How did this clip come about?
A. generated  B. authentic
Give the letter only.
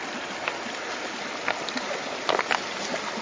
B